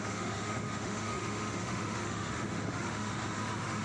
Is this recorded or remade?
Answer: remade